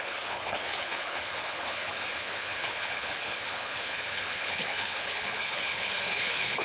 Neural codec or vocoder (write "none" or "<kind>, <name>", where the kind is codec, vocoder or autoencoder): codec, HILCodec